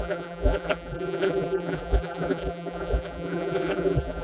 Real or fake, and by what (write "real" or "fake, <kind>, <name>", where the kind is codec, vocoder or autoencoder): fake, vocoder, BigVGAN v2